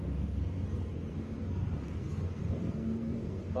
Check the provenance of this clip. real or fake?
fake